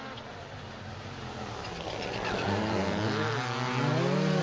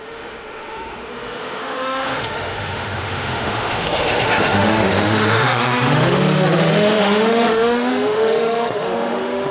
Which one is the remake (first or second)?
second